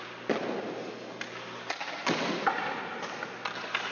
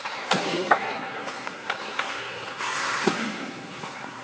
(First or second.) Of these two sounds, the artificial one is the second